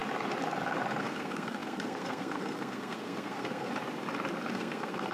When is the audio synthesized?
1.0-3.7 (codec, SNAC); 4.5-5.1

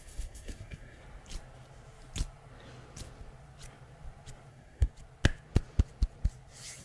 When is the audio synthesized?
0.0-1.0 (codec, SNAC); 4.5-4.9

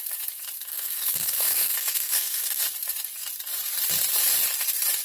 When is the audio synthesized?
0.7-2.6 (codec, SNAC)

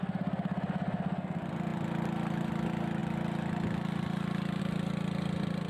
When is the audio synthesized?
none

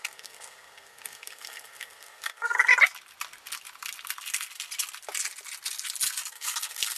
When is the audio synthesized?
0.0-2.7 (codec, SNAC); 6.3-7.0

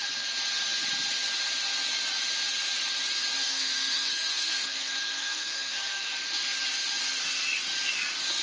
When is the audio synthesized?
3.4-6.1 (codec, SNAC)